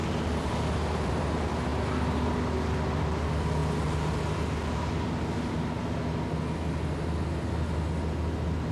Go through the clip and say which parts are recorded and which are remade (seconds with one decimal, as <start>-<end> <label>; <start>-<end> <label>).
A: 0.0-8.7 recorded

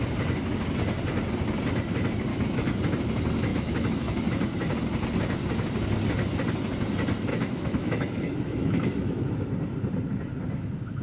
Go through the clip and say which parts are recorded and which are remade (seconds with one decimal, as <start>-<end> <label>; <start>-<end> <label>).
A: 0.0-2.3 recorded; 2.3-2.8 remade; 2.8-3.5 recorded; 3.5-4.2 remade; 4.2-7.3 recorded; 7.3-9.5 remade; 9.5-11.0 recorded

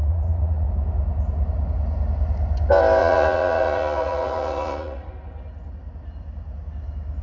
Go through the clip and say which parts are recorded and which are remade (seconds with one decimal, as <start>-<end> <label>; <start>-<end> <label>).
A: 0.0-0.7 remade; 0.7-3.0 recorded; 3.0-5.1 remade; 5.1-7.2 recorded